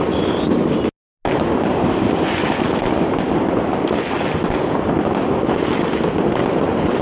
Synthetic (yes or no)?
no